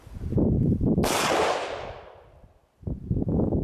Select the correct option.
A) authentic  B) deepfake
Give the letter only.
A